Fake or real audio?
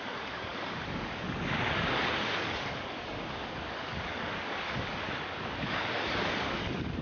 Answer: fake